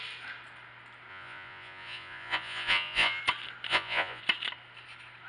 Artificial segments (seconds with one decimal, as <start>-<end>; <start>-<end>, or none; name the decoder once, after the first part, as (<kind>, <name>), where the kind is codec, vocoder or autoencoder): 1.1-3.2 (vocoder, Vocos); 3.7-4.2